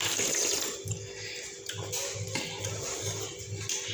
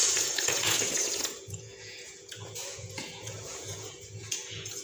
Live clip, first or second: first